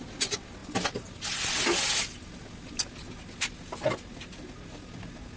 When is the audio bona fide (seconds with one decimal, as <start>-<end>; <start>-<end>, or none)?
0.0-5.4